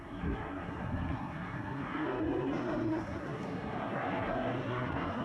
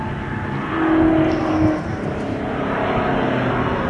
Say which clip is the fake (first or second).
first